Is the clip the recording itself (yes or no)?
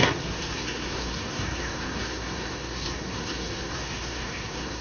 no